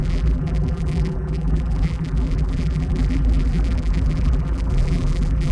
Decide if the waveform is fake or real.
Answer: fake